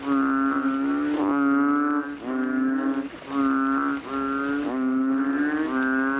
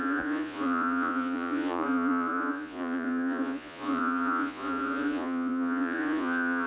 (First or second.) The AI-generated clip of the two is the second